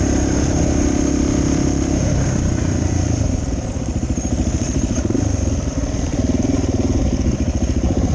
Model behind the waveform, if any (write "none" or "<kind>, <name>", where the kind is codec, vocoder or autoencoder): vocoder, BigVGAN v2